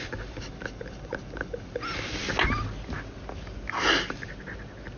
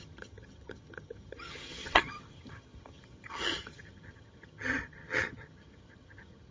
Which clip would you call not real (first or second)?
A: second